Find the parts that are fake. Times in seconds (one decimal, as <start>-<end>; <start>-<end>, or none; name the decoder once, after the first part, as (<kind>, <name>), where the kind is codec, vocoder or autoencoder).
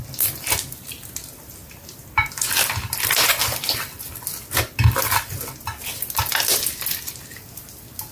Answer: none